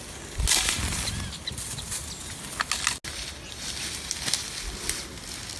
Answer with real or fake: real